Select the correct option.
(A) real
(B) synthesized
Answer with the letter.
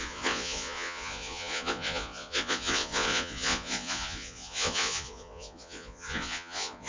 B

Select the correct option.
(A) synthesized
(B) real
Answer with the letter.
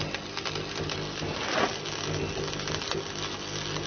B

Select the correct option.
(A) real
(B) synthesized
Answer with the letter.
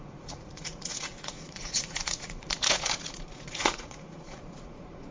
B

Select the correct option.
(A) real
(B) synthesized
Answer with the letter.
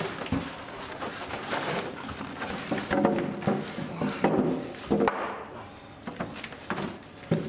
A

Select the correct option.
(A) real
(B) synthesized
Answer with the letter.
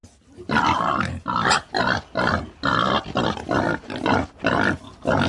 A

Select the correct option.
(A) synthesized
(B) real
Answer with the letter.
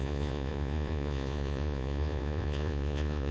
A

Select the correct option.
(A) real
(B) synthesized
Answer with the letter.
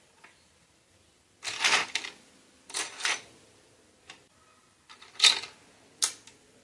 A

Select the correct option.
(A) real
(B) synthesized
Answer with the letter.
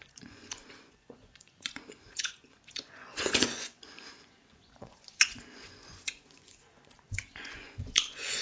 B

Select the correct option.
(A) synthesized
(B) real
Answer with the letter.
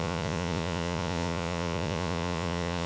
A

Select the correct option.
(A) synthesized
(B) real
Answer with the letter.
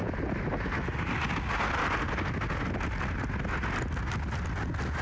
B